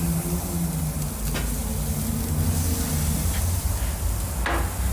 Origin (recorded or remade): recorded